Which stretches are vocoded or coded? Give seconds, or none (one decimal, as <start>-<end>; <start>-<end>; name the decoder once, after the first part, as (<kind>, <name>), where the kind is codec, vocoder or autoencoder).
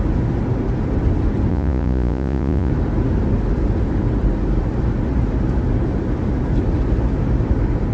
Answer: 1.5-2.7 (vocoder, Vocos)